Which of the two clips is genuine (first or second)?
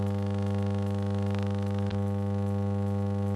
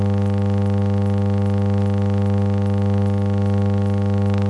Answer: second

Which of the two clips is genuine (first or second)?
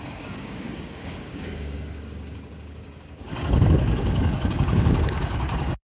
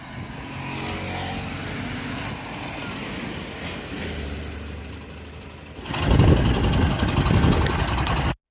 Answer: second